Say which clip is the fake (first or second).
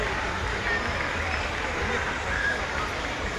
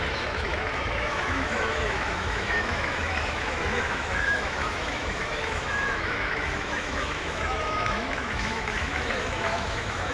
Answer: second